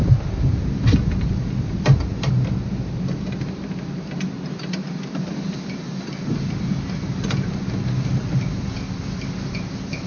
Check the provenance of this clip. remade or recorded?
recorded